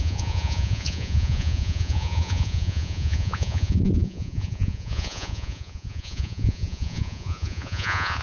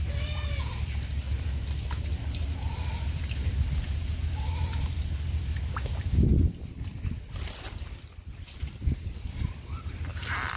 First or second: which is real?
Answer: second